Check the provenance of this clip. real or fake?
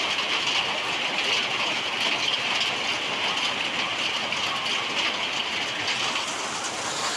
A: real